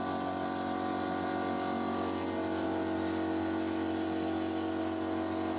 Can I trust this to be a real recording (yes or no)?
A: yes